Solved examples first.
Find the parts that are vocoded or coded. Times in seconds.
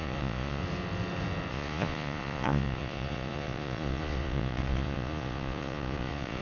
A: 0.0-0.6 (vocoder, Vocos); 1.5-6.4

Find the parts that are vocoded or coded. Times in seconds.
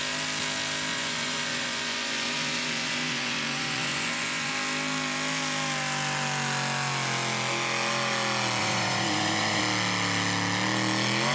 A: 0.9-4.5 (vocoder, Vocos); 8.6-9.6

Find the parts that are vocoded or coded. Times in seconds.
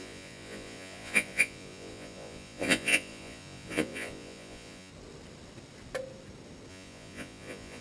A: 0.0-4.9 (vocoder, Vocos); 6.7-7.8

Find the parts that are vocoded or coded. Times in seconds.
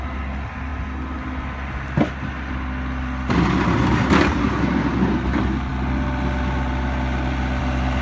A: none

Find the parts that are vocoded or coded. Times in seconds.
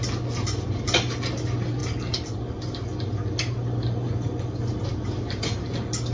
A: none